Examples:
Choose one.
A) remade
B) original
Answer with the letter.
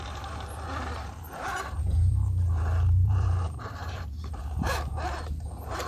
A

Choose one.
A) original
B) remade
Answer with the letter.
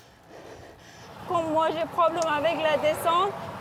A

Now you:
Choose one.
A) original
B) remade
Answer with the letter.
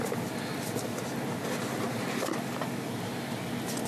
A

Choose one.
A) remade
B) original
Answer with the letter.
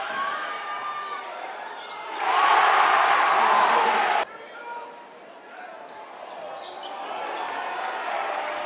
B